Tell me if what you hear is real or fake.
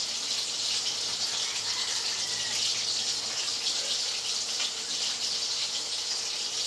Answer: real